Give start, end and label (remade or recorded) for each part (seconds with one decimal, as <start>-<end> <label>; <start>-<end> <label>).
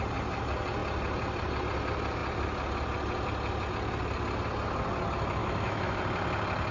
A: 0.0-5.4 recorded; 5.4-6.0 remade; 6.0-6.7 recorded